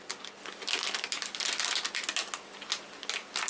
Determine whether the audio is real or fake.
real